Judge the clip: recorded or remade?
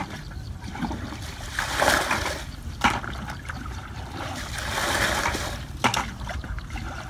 remade